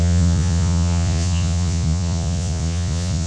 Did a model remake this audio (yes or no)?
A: yes